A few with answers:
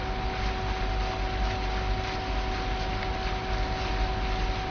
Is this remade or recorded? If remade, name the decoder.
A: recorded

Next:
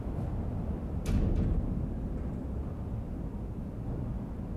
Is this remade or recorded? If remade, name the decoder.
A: recorded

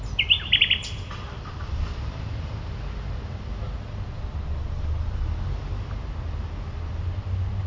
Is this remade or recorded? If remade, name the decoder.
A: recorded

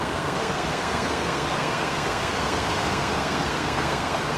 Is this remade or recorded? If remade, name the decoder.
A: remade, codec, SNAC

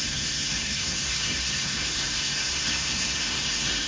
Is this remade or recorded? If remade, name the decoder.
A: remade, codec, SNAC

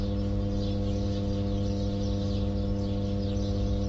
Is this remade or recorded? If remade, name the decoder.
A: recorded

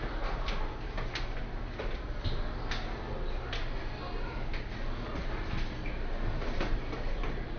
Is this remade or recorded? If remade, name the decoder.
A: recorded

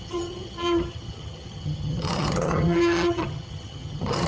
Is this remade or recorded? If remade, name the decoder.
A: remade, vocoder, HiFi-GAN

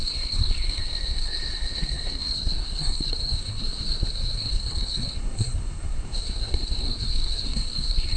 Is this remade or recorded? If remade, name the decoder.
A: remade, codec, SNAC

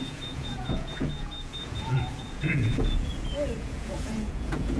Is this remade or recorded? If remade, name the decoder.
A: remade, vocoder, Vocos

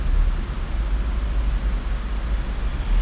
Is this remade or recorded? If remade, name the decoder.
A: recorded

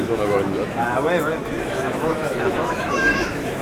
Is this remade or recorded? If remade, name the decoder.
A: remade, autoencoder, DAC-VAE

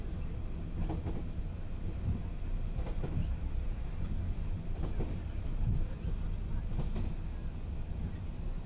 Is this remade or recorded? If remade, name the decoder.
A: recorded